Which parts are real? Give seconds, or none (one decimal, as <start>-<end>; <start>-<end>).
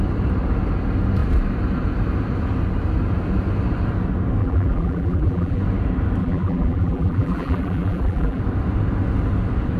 0.0-4.4; 5.6-6.2; 8.4-9.8